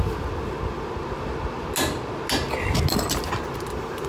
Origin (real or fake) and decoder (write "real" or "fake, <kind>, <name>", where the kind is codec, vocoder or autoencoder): real